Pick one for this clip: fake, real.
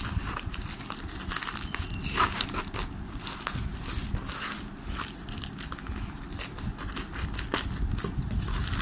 real